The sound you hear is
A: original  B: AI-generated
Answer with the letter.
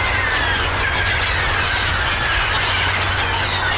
B